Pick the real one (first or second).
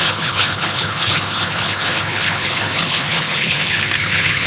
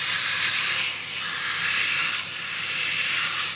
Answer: second